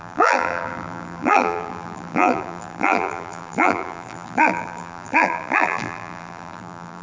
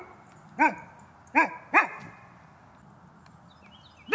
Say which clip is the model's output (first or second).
first